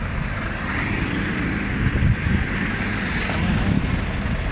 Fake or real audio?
real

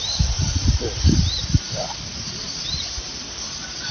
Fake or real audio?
fake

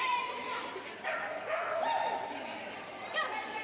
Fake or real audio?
fake